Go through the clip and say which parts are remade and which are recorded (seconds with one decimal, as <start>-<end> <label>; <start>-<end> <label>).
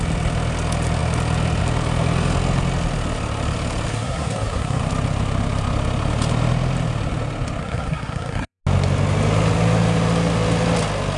0.0-3.9 recorded; 3.9-4.8 remade; 4.8-7.6 recorded; 7.6-8.6 remade; 8.6-11.2 recorded